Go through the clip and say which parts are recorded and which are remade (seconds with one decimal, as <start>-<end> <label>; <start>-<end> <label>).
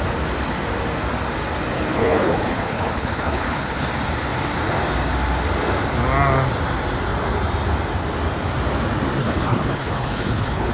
0.0-1.9 recorded; 1.9-3.9 remade; 3.9-9.2 recorded; 9.2-10.7 remade